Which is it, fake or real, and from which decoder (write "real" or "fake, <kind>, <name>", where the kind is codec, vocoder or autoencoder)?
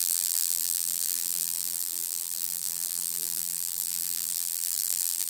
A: fake, vocoder, BigVGAN v2